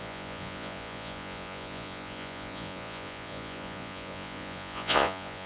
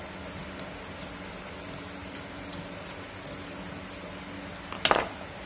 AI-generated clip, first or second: first